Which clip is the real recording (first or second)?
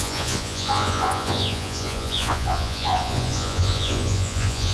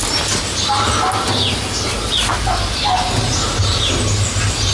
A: second